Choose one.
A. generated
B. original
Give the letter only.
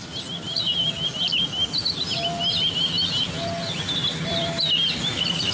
B